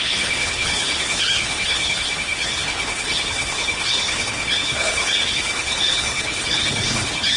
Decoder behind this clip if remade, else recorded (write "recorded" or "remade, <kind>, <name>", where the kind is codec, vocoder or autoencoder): remade, codec, HILCodec